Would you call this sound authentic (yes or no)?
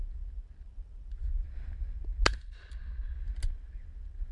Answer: yes